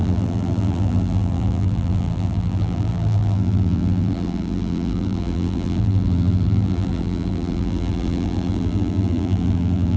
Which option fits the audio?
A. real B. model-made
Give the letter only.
B